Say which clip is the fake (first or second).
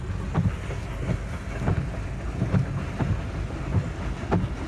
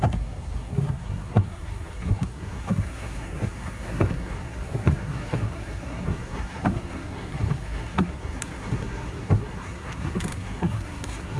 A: second